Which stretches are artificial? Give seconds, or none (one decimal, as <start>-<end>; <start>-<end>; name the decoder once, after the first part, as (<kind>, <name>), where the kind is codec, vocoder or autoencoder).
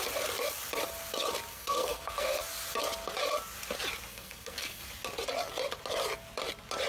1.5-2.4 (codec, SNAC); 4.1-4.8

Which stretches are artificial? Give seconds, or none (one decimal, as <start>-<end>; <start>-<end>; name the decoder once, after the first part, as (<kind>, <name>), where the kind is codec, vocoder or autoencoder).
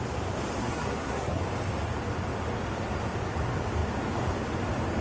0.6-1.4 (codec, SNAC)